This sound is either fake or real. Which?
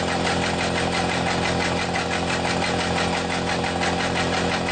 real